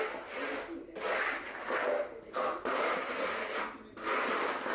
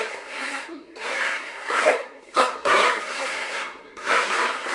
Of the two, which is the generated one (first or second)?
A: second